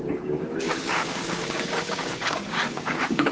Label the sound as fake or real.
fake